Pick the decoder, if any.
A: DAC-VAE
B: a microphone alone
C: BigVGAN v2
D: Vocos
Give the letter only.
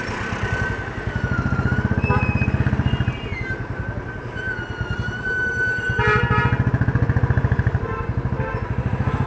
B